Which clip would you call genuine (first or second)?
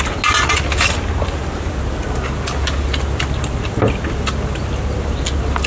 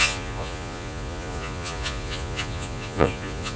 first